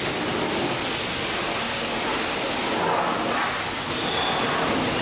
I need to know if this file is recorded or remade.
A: recorded